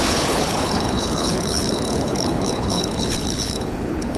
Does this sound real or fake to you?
fake